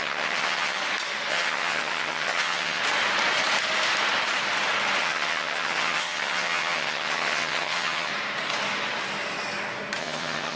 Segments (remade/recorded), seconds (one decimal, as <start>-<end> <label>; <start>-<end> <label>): 0.0-0.8 remade; 0.8-1.3 recorded; 1.3-2.8 remade; 2.8-5.0 recorded; 5.0-8.1 remade; 8.1-10.0 recorded; 10.0-10.6 remade